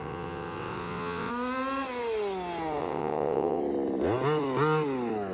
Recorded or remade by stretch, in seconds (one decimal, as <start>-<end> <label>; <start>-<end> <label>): 0.0-1.3 remade; 1.3-2.8 recorded; 2.8-3.6 remade; 3.6-5.3 recorded